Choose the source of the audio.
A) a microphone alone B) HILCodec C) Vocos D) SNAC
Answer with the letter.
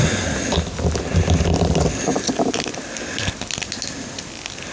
A